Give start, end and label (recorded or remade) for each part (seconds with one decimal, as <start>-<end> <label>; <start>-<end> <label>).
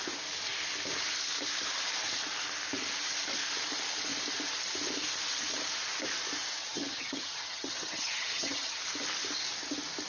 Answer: 0.0-6.6 recorded; 6.6-8.8 remade; 8.8-10.1 recorded